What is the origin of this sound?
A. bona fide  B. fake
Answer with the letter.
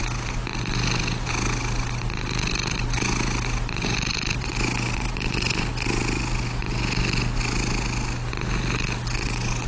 A